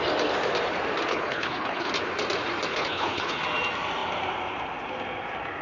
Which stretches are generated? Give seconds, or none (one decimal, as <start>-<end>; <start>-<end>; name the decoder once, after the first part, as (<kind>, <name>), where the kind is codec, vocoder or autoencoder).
1.1-1.9 (codec, HILCodec); 2.7-3.4

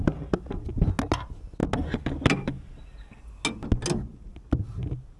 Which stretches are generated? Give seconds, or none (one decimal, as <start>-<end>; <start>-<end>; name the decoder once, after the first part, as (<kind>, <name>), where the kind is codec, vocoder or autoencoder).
none

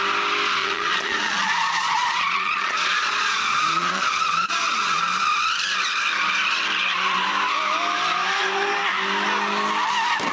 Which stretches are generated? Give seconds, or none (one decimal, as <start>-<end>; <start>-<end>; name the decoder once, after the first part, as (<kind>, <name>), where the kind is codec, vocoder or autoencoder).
0.6-5.0 (vocoder, Vocos)

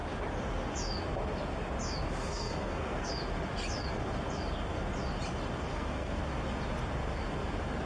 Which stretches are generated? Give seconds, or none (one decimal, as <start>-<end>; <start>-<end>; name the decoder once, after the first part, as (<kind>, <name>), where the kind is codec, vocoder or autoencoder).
2.2-3.1 (codec, SNAC); 5.7-6.2